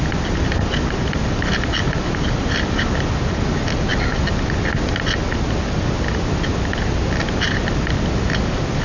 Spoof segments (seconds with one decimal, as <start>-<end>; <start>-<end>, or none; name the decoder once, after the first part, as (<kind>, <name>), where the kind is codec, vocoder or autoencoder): none